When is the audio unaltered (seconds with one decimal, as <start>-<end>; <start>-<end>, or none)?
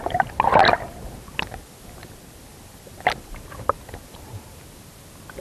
0.0-5.4